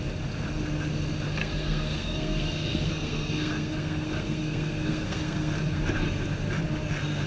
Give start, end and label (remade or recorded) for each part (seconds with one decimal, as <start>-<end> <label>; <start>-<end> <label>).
0.0-1.4 recorded; 1.4-5.8 remade; 5.8-7.3 recorded